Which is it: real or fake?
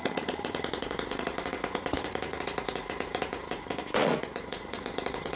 fake